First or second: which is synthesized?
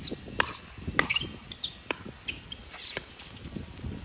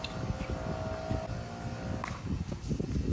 first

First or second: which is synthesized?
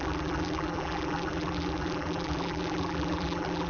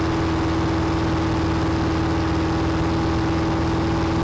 first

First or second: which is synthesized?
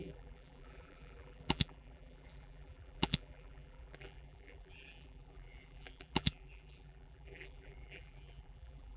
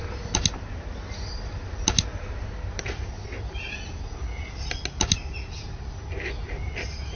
first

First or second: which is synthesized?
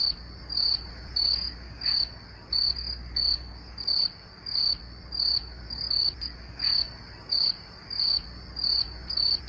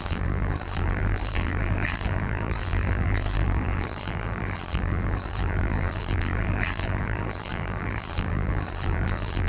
second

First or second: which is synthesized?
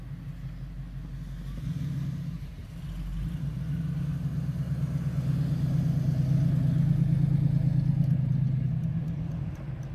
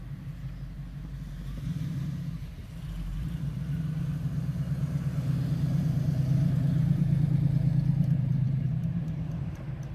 second